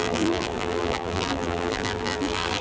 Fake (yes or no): yes